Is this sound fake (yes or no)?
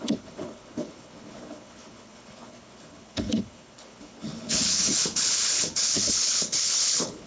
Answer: yes